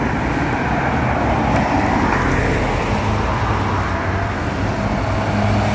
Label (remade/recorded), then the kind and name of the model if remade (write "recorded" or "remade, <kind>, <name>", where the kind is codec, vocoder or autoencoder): recorded